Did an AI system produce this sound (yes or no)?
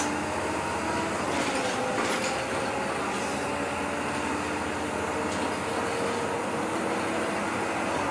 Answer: no